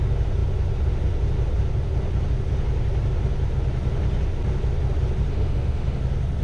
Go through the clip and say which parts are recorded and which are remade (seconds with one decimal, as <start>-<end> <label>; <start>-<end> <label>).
0.0-5.3 recorded; 5.3-6.0 remade; 6.0-6.4 recorded